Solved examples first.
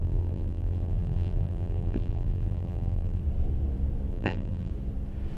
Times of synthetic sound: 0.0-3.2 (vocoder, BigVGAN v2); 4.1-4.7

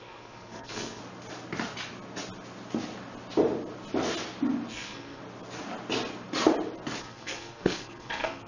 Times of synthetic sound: 0.0-1.0 (codec, SNAC); 4.7-5.2; 7.0-8.5

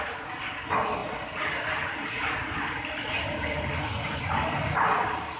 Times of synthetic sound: none

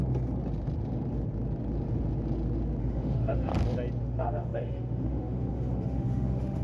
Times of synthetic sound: 2.8-3.5 (autoencoder, DAC-VAE); 4.0-6.6

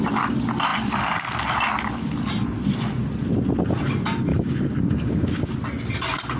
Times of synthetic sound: 4.3-5.5 (codec, DAC)